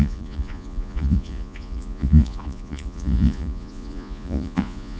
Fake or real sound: fake